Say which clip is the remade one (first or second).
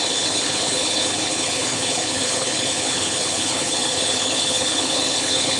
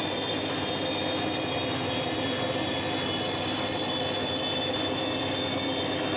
first